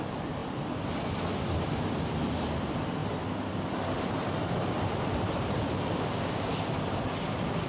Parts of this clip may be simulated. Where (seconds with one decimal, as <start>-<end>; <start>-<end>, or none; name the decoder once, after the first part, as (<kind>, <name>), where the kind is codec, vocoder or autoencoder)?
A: 0.0-0.4 (vocoder, BigVGAN v2); 1.2-3.0; 3.5-7.7